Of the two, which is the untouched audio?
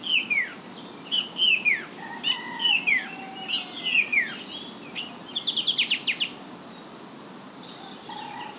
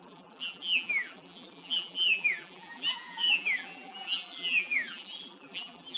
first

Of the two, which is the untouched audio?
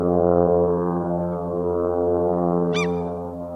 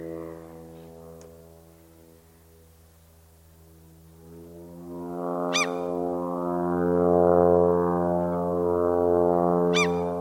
second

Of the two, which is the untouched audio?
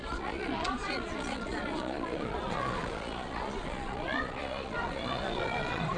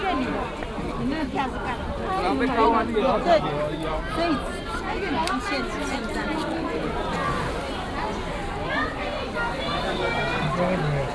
second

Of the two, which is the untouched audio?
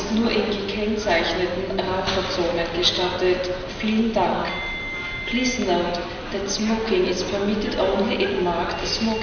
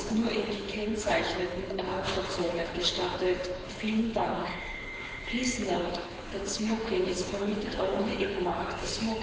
first